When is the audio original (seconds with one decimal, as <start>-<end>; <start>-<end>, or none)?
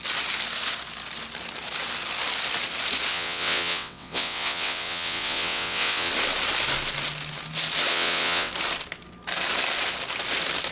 0.0-3.1; 6.1-7.9; 8.5-10.7